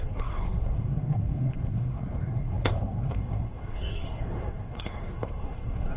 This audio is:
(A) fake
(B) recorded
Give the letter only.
A